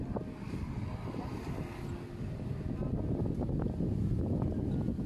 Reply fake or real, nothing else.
real